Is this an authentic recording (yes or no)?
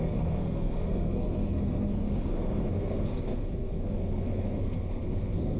no